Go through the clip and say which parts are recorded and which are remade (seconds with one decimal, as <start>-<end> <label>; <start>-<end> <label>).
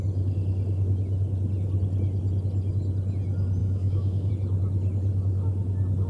0.0-3.6 recorded; 3.6-4.3 remade; 4.3-6.1 recorded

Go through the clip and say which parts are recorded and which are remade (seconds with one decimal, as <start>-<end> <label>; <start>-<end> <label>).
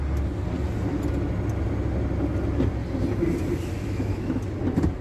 0.0-3.8 recorded; 3.8-4.4 remade; 4.4-5.0 recorded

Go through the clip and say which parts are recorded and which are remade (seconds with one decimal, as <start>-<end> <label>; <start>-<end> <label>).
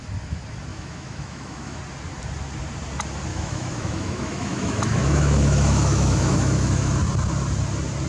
0.0-0.7 recorded; 0.7-1.8 remade; 1.8-3.3 recorded; 3.3-6.9 remade; 6.9-8.1 recorded